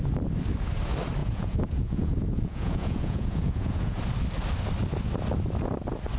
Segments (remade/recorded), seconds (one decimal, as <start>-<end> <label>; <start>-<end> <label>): 0.0-1.2 recorded; 1.2-4.0 remade; 4.0-6.2 recorded